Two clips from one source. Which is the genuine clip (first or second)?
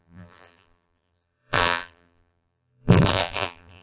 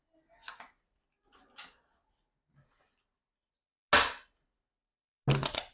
second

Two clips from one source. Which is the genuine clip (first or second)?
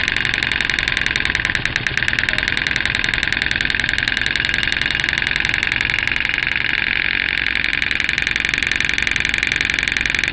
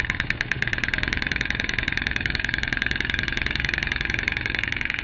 first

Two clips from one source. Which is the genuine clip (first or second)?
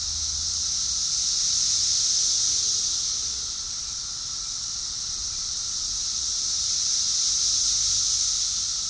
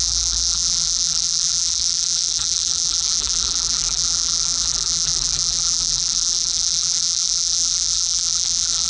first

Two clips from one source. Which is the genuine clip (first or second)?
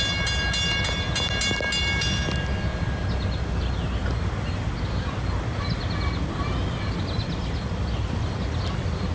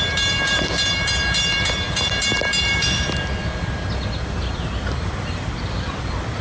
first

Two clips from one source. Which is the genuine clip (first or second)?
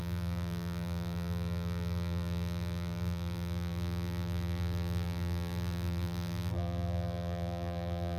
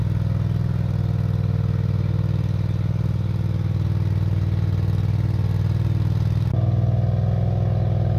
second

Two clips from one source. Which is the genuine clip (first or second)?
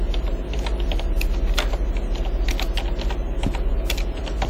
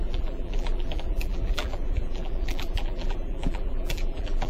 first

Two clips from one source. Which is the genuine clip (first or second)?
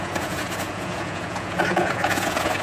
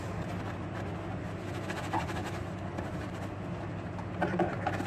second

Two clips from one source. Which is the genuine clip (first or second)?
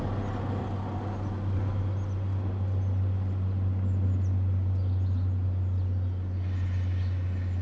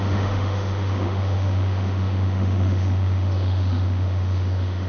first